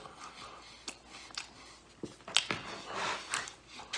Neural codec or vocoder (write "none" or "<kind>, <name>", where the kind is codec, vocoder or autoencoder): none